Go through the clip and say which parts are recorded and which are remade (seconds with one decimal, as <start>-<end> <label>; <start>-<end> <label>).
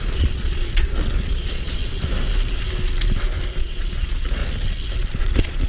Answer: 0.0-1.8 remade; 1.8-3.5 recorded; 3.5-4.4 remade; 4.4-5.2 recorded; 5.2-5.7 remade